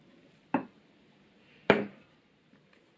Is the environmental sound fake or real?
fake